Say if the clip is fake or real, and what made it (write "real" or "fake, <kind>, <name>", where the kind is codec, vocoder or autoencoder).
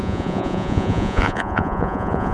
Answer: fake, vocoder, Vocos